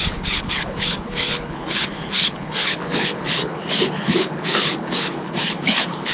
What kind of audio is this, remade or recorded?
remade